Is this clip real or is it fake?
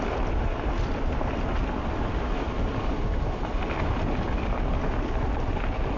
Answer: real